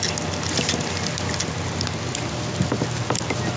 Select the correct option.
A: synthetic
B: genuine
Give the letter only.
B